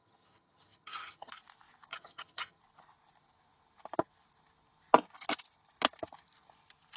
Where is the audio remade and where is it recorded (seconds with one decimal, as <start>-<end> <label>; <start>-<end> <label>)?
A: 0.0-1.3 remade; 1.3-1.9 recorded; 1.9-2.6 remade; 2.6-7.0 recorded

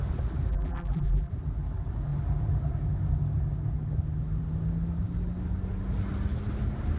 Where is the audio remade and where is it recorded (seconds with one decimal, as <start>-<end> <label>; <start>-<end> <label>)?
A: 0.0-0.5 recorded; 0.5-1.3 remade; 1.3-7.0 recorded